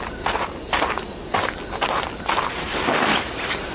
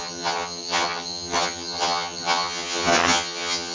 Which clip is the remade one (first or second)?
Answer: second